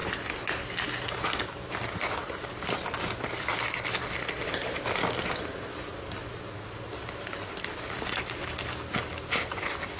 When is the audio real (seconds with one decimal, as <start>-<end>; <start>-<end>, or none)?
0.0-10.0